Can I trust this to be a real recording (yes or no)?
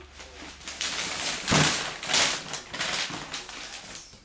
yes